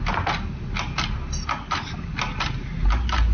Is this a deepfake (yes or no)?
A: no